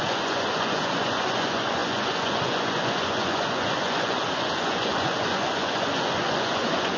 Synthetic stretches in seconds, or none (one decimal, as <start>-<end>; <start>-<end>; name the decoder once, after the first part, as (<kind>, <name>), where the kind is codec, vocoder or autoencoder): 0.0-7.0 (vocoder, Vocos)